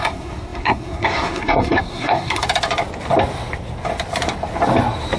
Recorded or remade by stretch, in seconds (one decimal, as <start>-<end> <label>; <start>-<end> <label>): 0.0-2.4 remade; 2.4-5.2 recorded